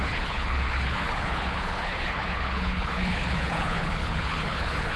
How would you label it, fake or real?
fake